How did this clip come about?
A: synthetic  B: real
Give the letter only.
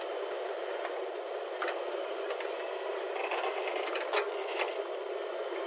A